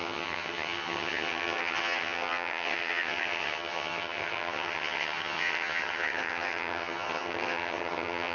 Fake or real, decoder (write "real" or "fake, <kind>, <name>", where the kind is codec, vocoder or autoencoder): fake, vocoder, HiFi-GAN